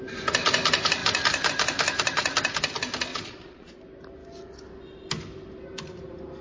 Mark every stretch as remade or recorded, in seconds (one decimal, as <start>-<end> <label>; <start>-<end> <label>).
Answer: 0.0-3.1 recorded; 3.1-3.8 remade; 3.8-6.4 recorded

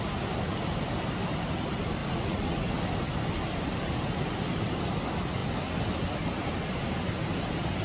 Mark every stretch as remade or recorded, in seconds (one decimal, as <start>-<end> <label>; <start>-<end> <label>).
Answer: 0.0-2.0 recorded; 2.0-2.7 remade; 2.7-7.8 recorded